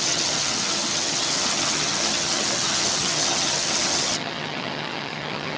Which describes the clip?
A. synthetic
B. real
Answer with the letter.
A